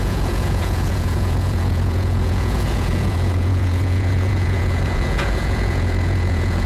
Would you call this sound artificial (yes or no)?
yes